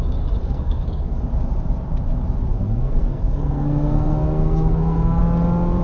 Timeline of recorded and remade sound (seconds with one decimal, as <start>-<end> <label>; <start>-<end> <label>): 0.0-0.4 recorded; 0.4-1.2 remade; 1.2-2.5 recorded; 2.5-5.2 remade; 5.2-5.8 recorded